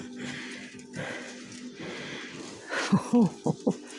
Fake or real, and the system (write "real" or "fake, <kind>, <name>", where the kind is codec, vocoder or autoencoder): real